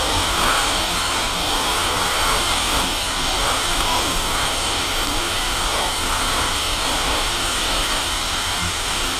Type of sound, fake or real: fake